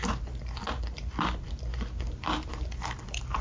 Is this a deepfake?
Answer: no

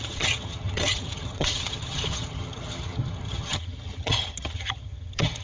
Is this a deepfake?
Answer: yes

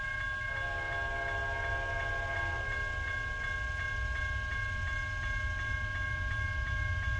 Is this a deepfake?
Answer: no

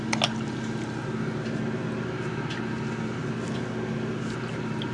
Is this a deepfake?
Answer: no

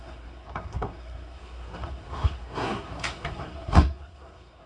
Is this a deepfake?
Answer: yes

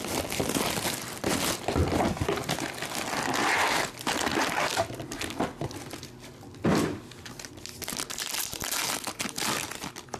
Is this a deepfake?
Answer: no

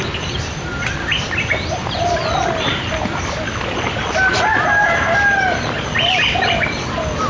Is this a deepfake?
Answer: no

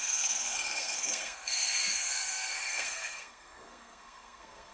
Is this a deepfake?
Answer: yes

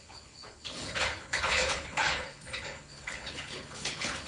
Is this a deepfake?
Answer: yes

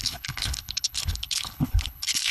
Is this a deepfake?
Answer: yes